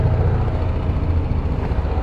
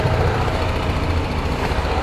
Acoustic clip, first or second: first